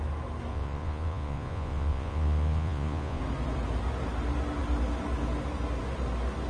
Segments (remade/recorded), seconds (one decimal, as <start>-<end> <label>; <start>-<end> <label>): 0.0-0.5 recorded; 0.5-3.2 remade; 3.2-6.5 recorded